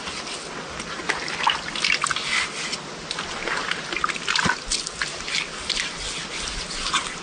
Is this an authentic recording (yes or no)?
yes